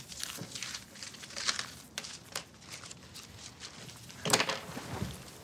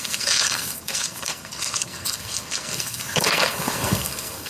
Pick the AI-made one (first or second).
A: second